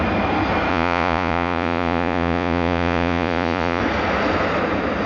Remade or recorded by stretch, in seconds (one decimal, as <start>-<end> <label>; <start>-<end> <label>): 0.0-0.7 recorded; 0.7-3.8 remade; 3.8-5.1 recorded